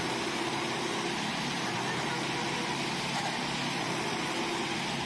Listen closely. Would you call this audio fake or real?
real